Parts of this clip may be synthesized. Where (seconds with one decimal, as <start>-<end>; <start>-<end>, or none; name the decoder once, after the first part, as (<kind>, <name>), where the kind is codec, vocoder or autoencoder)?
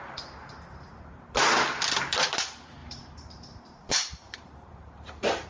2.8-5.5 (vocoder, BigVGAN v2)